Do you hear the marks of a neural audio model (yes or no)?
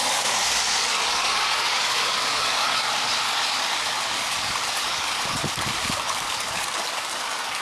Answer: yes